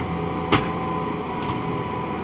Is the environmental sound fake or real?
real